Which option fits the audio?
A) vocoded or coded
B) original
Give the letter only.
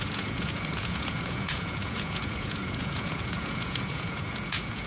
A